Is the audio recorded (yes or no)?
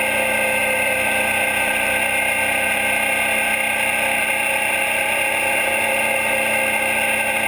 yes